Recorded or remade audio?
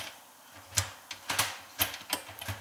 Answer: recorded